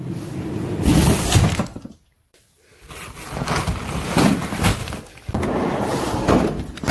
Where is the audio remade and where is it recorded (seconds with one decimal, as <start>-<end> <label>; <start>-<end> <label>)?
0.0-2.7 recorded; 2.7-3.6 remade; 3.6-4.8 recorded; 4.8-6.3 remade; 6.3-6.9 recorded